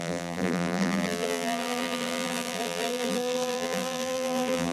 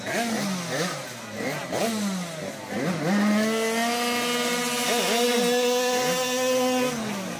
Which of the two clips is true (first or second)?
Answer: second